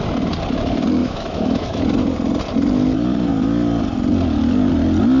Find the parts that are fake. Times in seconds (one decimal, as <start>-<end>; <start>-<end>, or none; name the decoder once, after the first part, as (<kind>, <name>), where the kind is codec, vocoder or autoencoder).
1.0-1.8 (autoencoder, DAC-VAE)